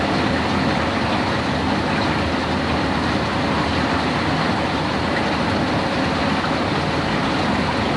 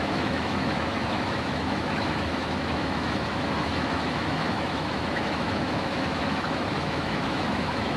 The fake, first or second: second